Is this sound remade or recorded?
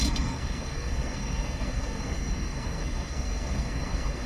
remade